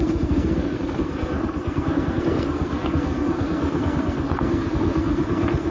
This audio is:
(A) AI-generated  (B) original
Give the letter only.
A